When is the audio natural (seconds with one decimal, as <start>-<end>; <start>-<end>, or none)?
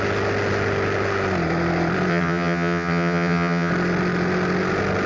0.0-2.1; 3.7-5.1